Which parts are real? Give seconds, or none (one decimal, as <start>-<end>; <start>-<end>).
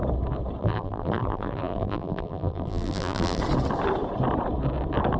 0.0-0.6; 3.4-5.2